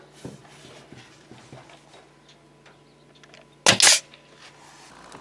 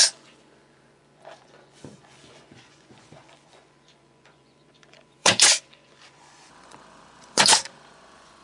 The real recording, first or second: first